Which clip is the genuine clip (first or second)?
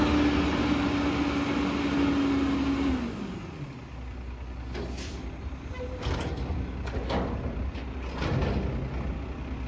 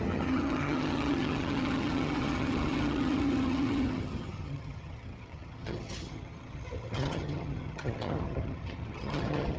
first